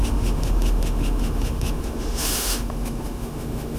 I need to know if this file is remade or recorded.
remade